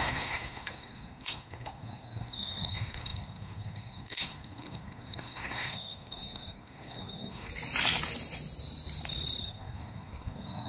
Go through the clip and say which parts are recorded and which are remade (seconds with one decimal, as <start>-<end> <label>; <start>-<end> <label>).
0.0-7.5 remade; 7.5-9.4 recorded; 9.4-10.7 remade